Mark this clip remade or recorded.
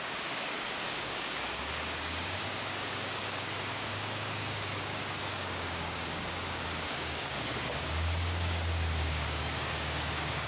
remade